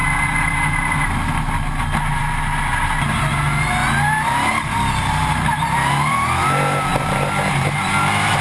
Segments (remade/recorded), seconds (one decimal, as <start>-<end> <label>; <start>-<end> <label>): 0.0-8.4 recorded